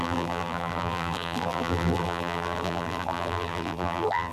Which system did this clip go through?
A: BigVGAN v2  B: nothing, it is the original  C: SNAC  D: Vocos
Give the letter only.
A